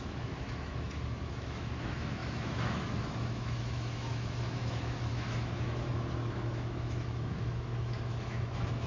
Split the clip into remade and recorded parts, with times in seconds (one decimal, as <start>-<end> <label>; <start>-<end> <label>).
0.0-8.9 remade